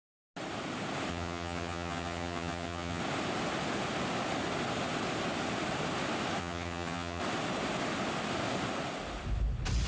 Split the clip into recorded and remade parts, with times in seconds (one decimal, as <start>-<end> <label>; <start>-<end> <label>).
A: 0.0-1.1 recorded; 1.1-3.0 remade; 3.0-6.4 recorded; 6.4-7.2 remade; 7.2-9.9 recorded